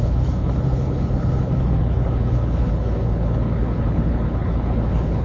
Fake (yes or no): yes